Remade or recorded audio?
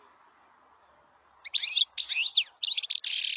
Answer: recorded